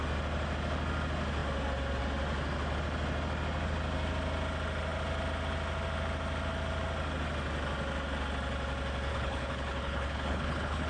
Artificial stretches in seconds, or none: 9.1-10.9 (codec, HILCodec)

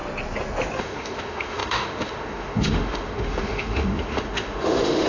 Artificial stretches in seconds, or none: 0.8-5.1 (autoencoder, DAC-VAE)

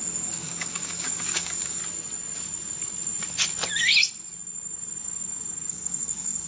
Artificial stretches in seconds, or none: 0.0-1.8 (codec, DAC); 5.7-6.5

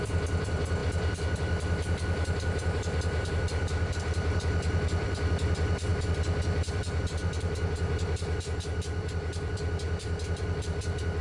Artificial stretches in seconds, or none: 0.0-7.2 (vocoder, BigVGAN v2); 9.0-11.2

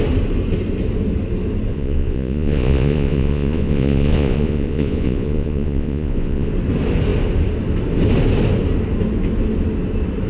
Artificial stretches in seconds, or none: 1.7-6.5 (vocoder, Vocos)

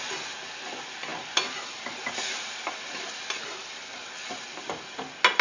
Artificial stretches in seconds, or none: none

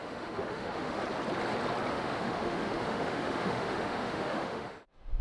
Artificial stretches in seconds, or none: 0.0-1.0 (autoencoder, DAC-VAE); 1.9-5.2

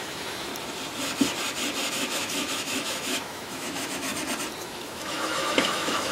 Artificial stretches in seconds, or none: 0.0-0.5 (autoencoder, DAC-VAE); 1.9-4.1; 4.6-6.1